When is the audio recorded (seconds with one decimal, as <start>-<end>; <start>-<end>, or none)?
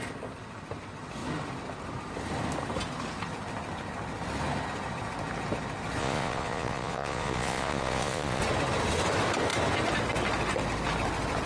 0.0-6.0; 8.4-11.5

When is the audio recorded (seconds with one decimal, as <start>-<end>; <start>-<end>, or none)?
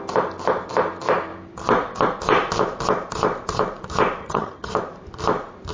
0.0-4.2; 4.7-5.7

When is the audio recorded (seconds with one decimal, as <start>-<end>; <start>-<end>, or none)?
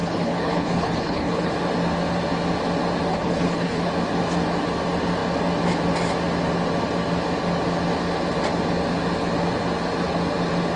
1.5-3.1; 3.9-10.8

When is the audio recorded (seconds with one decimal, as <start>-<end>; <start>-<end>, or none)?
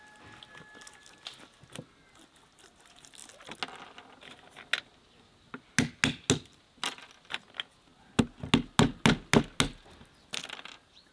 0.0-11.1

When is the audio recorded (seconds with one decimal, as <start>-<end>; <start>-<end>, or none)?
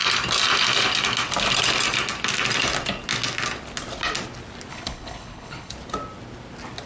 0.0-4.7; 5.7-6.9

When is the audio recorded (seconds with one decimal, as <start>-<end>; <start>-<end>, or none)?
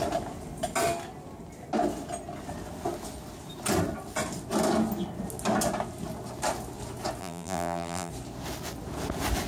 0.0-7.2; 8.1-9.5